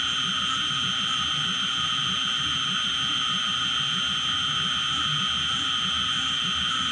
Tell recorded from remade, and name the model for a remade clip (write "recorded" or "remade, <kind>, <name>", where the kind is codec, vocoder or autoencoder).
recorded